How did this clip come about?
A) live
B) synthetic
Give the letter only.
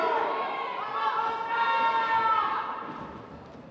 A